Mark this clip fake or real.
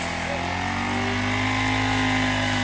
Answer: real